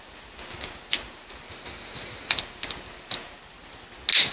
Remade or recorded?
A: recorded